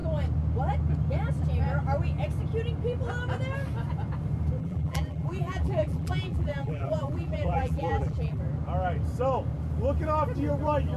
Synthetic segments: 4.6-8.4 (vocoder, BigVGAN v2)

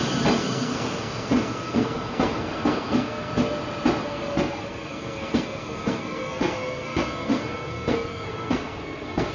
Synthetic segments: 0.4-3.3 (codec, SNAC); 4.0-9.3

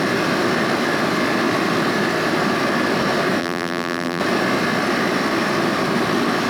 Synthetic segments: 3.4-4.2 (vocoder, BigVGAN v2)

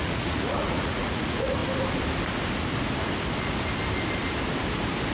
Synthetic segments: 0.0-1.6 (vocoder, Vocos)